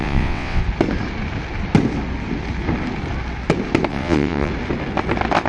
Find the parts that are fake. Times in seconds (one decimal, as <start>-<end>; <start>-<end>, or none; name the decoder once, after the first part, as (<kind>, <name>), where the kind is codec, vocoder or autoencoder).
0.0-0.6 (vocoder, WaveNeXt); 3.9-4.5